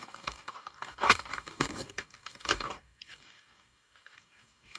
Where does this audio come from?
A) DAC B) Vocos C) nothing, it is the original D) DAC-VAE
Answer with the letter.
A